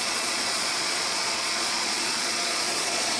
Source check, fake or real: fake